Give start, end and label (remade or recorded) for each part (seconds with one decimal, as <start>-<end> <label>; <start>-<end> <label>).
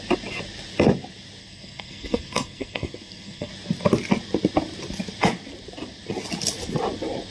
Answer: 0.0-1.4 recorded; 1.4-3.5 remade; 3.5-7.3 recorded